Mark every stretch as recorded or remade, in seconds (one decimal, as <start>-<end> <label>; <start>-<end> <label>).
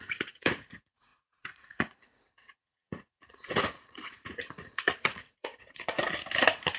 0.0-6.0 remade; 6.0-6.8 recorded